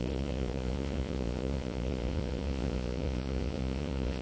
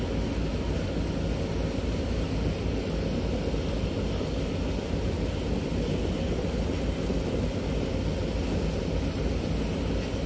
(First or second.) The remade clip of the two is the first